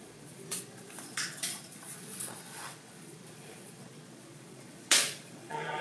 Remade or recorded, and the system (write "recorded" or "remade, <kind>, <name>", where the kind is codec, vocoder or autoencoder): remade, vocoder, Vocos